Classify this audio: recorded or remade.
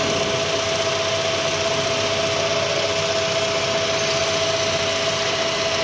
recorded